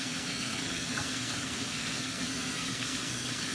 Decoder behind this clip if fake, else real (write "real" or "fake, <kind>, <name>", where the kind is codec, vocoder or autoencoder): fake, codec, SNAC